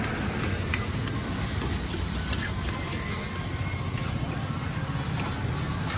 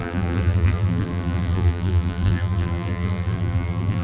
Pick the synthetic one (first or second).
second